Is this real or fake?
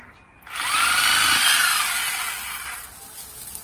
real